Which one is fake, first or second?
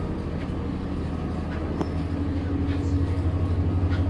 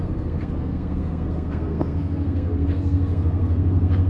second